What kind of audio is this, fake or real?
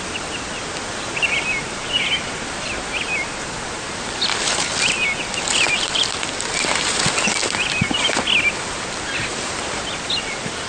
real